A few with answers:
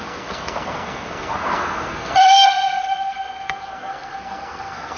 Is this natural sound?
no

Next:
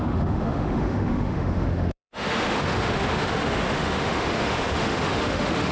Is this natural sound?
no